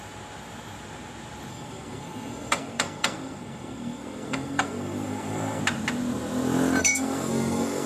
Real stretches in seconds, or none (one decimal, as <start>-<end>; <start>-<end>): 0.0-1.5; 5.6-6.8